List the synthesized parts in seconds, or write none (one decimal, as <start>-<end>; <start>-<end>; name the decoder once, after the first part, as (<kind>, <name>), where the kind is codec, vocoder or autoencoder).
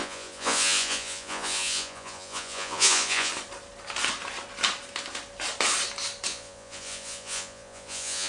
0.0-3.3 (vocoder, Vocos); 6.3-8.3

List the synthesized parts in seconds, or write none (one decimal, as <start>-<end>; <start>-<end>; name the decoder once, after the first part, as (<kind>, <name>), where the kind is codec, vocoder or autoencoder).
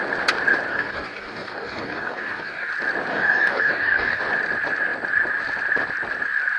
0.7-2.7 (codec, DAC); 3.1-4.2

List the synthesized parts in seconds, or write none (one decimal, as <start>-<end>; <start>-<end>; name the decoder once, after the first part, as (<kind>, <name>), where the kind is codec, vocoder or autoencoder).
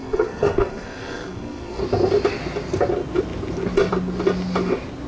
0.0-1.8 (codec, SNAC)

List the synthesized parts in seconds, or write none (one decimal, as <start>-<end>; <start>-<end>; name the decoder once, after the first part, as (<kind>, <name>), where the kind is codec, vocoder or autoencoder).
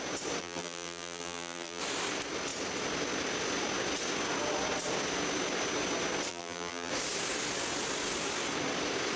0.4-1.8 (vocoder, BigVGAN v2); 6.3-6.9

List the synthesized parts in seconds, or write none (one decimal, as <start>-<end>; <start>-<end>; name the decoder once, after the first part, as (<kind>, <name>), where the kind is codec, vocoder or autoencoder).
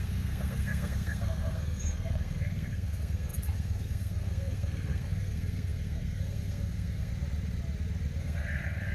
0.0-7.1 (codec, SNAC); 8.2-8.9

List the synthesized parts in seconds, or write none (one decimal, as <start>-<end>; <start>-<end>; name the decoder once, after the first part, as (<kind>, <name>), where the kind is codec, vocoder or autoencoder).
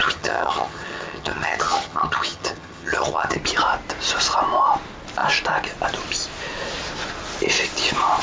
0.0-3.4 (vocoder, HiFi-GAN)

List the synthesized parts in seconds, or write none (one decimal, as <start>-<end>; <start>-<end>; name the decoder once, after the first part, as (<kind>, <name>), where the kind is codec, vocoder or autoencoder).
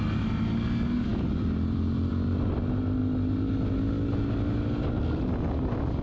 none